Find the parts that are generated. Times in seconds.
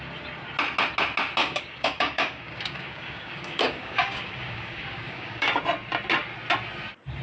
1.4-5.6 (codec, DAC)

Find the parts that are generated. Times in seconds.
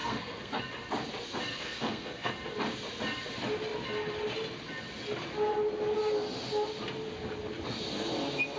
0.0-0.6 (codec, SNAC); 1.5-2.3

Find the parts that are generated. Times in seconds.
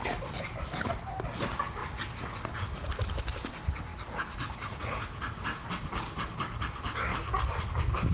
none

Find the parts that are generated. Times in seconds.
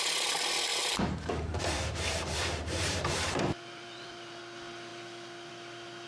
0.7-4.4 (vocoder, BigVGAN v2)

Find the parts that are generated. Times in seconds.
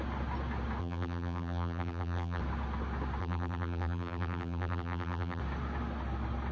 0.8-2.4 (vocoder, BigVGAN v2); 3.2-5.4